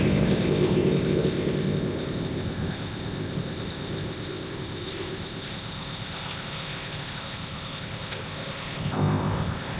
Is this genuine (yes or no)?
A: no